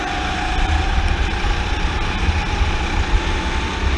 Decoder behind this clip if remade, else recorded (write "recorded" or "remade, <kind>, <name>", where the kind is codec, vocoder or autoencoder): recorded